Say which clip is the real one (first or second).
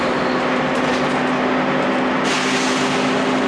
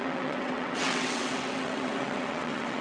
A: first